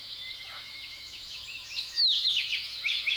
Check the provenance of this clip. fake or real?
fake